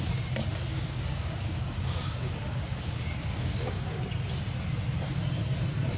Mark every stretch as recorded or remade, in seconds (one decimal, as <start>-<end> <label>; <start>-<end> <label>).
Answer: 0.0-0.7 recorded; 0.7-4.0 remade; 4.0-6.0 recorded